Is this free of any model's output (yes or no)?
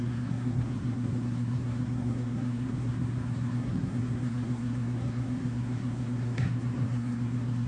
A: no